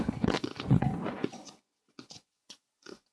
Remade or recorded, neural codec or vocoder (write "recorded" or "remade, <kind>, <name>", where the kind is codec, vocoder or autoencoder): remade, vocoder, Vocos